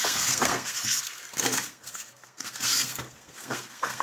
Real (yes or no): no